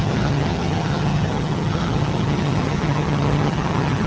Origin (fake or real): fake